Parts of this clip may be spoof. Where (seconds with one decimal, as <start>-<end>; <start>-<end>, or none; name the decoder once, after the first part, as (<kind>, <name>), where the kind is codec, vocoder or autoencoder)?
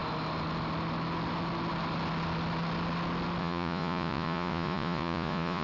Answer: 3.4-5.6 (vocoder, Vocos)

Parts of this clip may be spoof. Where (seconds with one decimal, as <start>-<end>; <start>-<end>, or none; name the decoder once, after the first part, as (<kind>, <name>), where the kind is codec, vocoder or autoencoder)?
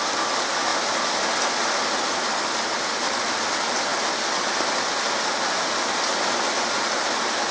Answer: none